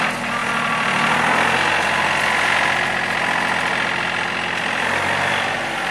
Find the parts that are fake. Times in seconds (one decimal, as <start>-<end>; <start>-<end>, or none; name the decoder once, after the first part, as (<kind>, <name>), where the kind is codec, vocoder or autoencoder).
none